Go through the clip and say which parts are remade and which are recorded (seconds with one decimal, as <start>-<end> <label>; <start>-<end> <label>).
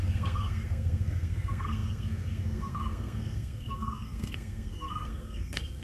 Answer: 0.0-5.8 remade